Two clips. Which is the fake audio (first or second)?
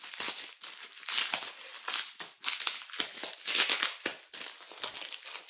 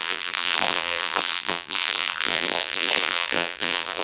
second